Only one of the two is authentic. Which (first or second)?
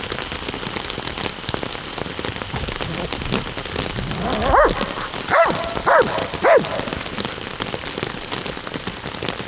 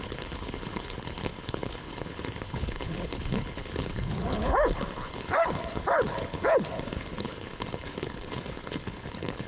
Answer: first